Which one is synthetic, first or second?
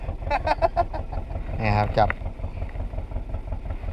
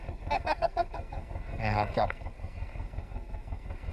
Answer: second